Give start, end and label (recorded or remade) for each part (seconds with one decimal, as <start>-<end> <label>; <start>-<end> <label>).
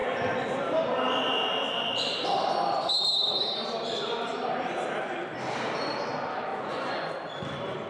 0.0-6.5 recorded; 6.5-7.1 remade; 7.1-7.9 recorded